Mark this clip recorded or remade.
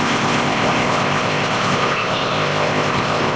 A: remade